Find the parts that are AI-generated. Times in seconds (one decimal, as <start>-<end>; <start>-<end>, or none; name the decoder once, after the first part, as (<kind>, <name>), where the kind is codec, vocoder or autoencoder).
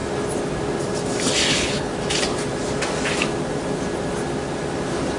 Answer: 1.5-1.9 (codec, HILCodec)